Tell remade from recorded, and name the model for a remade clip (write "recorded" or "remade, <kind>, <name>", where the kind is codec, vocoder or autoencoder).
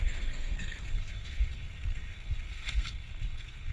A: remade, codec, SNAC